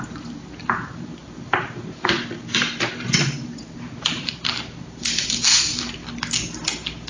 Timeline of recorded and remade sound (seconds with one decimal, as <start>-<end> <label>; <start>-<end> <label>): 0.0-6.0 remade; 6.0-7.1 recorded